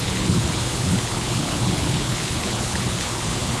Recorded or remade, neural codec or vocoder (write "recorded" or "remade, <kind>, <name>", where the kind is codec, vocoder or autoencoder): remade, codec, HILCodec